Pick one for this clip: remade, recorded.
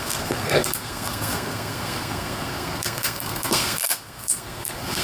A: remade